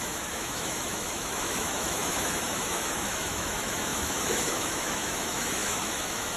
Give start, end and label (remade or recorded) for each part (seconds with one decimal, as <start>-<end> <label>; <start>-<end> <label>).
0.0-6.4 remade